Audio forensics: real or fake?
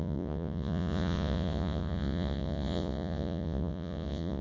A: fake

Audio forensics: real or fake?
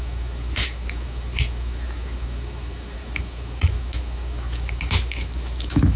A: fake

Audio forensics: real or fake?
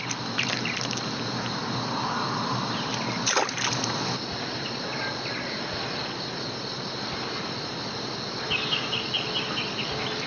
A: real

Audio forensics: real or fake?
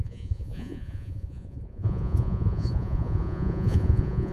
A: fake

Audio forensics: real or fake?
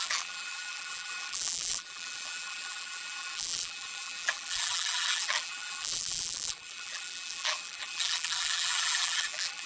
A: fake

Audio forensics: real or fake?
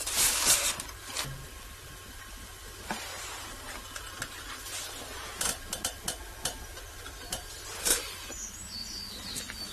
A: real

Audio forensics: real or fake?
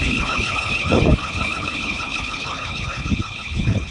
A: fake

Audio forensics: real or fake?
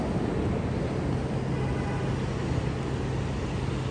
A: real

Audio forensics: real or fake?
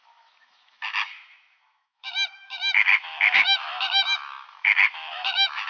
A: fake